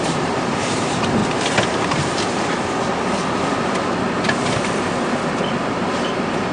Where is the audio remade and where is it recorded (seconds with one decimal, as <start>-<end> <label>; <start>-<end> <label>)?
0.0-1.2 remade; 1.2-5.1 recorded; 5.1-6.5 remade

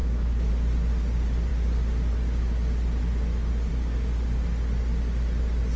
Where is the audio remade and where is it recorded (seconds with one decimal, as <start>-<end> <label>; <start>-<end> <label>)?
0.0-0.5 remade; 0.5-5.8 recorded